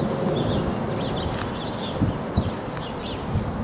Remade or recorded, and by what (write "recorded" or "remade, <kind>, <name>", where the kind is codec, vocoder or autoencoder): recorded